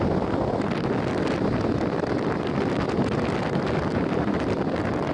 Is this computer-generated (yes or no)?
no